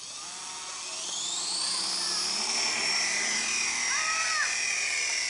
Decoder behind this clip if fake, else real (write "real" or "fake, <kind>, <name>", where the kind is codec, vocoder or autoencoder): real